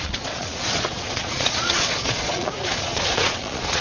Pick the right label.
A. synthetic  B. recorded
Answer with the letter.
A